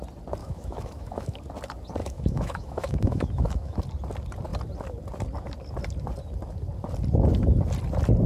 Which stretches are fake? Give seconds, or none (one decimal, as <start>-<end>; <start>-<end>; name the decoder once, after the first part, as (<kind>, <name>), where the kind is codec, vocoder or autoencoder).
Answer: 0.4-1.4 (autoencoder, DAC-VAE); 2.0-3.8

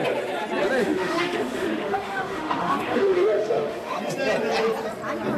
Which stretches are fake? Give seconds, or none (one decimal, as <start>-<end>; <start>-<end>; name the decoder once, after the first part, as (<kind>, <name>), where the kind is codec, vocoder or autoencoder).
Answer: 0.8-4.0 (autoencoder, DAC-VAE)

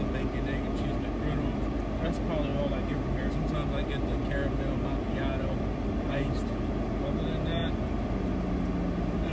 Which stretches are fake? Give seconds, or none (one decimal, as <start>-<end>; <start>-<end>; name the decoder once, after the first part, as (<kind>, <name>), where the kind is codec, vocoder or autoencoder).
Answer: none

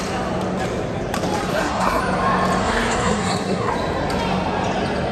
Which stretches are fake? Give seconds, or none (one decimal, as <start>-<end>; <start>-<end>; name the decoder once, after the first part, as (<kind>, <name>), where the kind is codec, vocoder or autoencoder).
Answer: 1.5-2.0 (codec, SNAC); 2.6-3.7

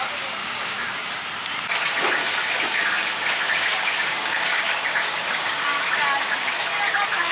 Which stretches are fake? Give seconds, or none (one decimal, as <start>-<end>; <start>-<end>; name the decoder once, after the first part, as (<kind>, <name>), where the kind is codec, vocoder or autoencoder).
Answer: 0.4-1.1 (codec, DAC); 2.2-5.8

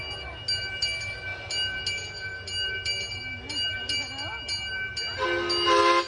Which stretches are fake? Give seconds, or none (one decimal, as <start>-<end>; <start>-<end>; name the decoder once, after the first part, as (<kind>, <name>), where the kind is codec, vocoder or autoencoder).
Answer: none

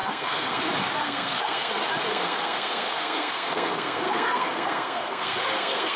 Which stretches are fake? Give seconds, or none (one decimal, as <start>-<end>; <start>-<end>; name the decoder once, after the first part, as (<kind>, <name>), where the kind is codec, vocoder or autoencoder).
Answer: 0.0-0.6 (codec, SNAC); 1.0-1.7; 2.1-6.0

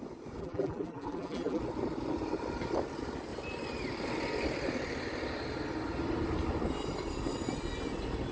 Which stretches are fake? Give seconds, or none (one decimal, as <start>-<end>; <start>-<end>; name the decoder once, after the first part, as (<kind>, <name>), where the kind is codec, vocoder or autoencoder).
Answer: 0.4-1.6 (vocoder, BigVGAN v2)